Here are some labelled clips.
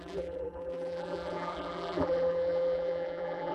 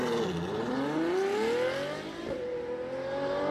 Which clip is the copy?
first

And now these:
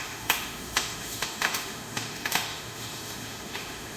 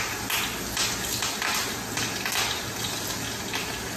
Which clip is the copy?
first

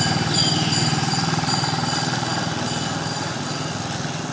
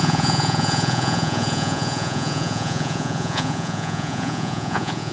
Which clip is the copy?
second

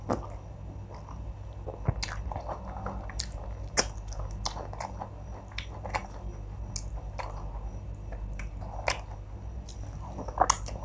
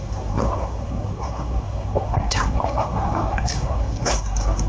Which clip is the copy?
second